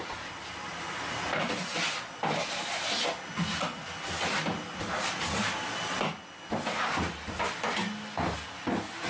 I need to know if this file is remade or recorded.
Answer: recorded